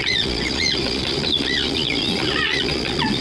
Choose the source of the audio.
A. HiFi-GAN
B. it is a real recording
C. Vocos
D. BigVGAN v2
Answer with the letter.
C